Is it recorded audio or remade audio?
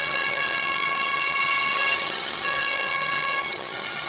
remade